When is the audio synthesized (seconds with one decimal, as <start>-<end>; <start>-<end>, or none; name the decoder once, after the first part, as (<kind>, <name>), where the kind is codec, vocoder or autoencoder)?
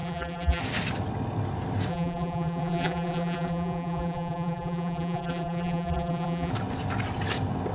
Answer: 0.0-0.6 (vocoder, BigVGAN v2); 1.9-6.5